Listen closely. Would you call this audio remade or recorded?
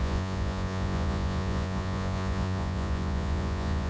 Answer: remade